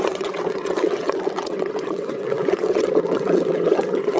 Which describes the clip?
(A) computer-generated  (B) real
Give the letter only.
A